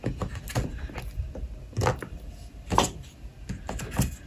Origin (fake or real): real